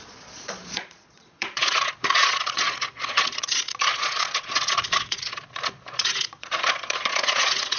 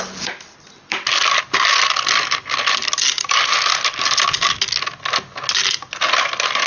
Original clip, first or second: second